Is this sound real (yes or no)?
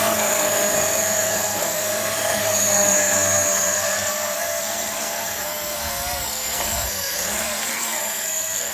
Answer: no